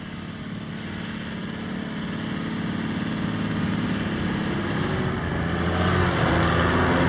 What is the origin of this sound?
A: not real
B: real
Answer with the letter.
B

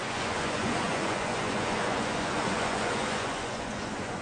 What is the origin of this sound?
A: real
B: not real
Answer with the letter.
B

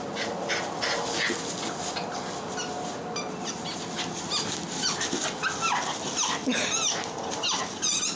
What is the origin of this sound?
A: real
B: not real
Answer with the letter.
A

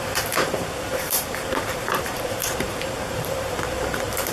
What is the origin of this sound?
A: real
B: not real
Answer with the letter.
B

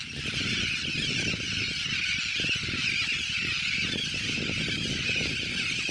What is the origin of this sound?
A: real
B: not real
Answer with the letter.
A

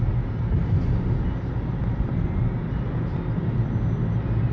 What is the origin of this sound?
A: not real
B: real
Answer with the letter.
B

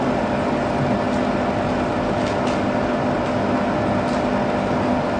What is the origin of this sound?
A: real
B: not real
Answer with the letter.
A